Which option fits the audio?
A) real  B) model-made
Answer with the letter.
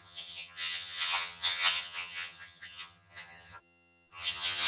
B